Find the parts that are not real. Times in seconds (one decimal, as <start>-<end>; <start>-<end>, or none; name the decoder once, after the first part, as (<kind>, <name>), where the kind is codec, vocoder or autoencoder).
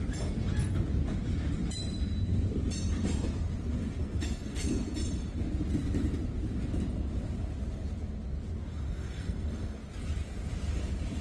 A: 4.0-4.7 (codec, SNAC); 8.7-9.8